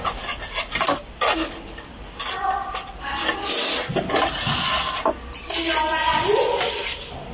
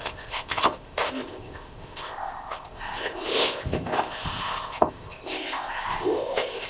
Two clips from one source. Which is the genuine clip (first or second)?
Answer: first